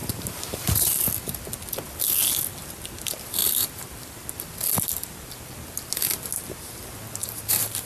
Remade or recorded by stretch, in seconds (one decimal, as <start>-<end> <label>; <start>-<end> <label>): 0.0-1.0 remade; 1.0-7.2 recorded; 7.2-7.9 remade